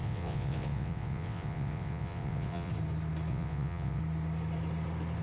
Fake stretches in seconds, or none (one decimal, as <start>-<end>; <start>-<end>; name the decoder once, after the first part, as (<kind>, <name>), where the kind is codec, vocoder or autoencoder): 0.0-2.7 (vocoder, WaveNeXt); 3.3-4.0